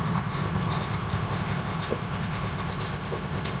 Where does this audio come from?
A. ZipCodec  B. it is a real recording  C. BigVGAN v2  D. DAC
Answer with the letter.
A